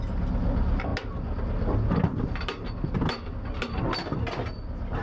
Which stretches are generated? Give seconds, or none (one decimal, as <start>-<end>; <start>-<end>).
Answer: none